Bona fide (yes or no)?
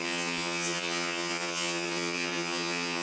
no